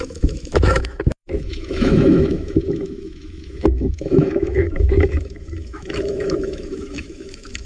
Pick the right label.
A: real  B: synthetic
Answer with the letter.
B